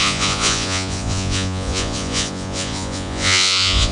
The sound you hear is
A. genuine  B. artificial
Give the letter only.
B